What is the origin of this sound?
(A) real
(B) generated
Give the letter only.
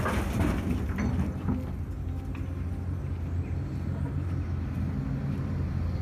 A